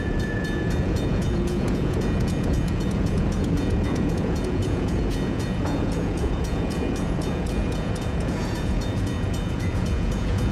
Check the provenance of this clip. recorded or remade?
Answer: remade